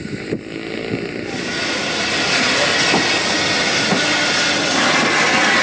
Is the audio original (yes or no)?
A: yes